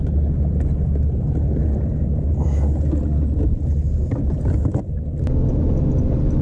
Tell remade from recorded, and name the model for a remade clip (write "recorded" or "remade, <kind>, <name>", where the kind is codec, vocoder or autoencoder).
recorded